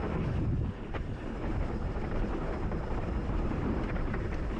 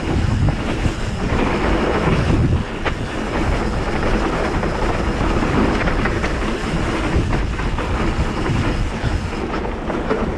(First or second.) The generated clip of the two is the first